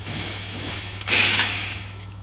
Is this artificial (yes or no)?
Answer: yes